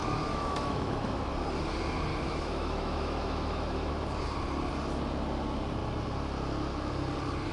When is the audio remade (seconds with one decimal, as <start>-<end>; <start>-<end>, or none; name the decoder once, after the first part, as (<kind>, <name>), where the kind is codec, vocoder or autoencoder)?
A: 0.0-1.3 (autoencoder, DAC-VAE); 2.1-3.9